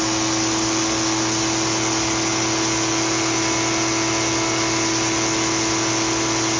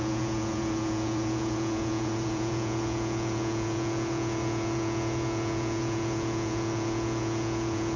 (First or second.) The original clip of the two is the first